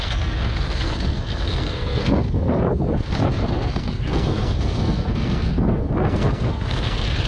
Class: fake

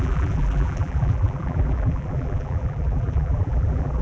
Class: fake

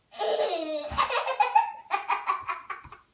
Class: fake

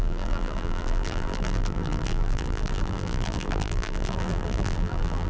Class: fake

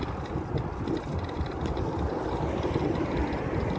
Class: real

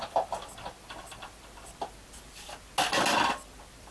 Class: real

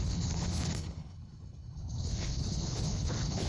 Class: fake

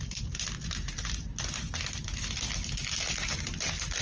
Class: real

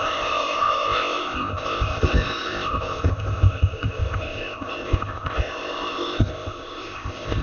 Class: fake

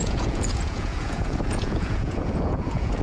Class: fake